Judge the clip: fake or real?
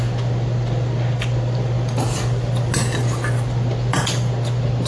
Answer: real